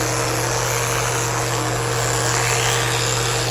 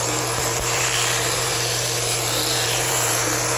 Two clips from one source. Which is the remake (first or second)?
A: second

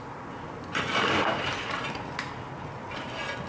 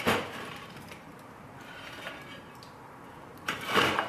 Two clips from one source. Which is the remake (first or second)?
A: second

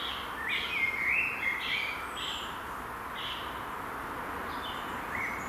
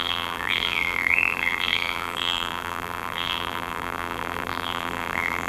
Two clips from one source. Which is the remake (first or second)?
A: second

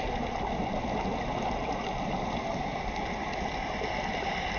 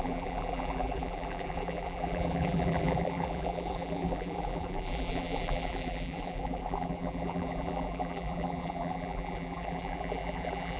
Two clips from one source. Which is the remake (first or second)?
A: second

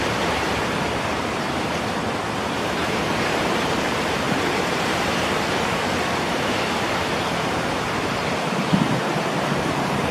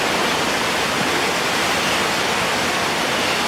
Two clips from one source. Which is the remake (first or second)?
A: first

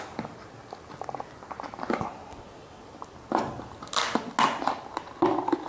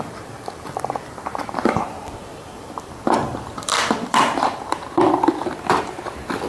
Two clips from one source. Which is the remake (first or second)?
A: second